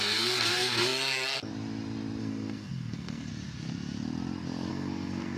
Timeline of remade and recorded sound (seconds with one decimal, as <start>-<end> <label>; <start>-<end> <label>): 0.0-1.5 remade; 1.5-2.2 recorded; 2.2-3.3 remade; 3.3-4.7 recorded; 4.7-5.4 remade

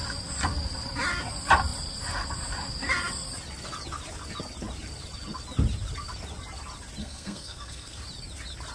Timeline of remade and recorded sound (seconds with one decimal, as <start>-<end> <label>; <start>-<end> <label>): 0.0-7.0 recorded; 7.0-8.0 remade; 8.0-8.7 recorded

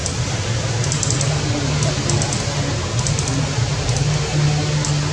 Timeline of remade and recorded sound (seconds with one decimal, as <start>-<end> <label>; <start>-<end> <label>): 0.0-5.1 recorded

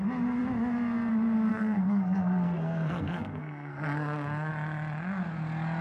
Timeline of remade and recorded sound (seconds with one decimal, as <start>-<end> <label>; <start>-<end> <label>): 0.0-1.5 recorded; 1.5-4.5 remade; 4.5-5.8 recorded